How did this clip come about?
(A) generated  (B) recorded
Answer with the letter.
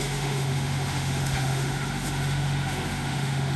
A